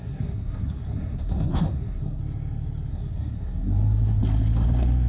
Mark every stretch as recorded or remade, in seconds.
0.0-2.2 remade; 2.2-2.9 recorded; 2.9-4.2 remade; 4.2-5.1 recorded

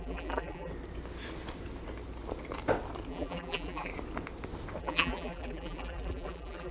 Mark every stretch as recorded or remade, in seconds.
0.0-0.7 remade; 0.7-3.1 recorded; 3.1-3.9 remade; 3.9-4.8 recorded; 4.8-6.7 remade

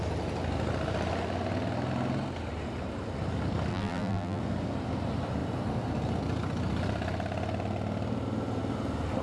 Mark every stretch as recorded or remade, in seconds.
0.0-3.7 recorded; 3.7-4.4 remade; 4.4-9.2 recorded